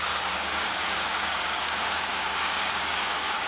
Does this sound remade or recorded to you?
remade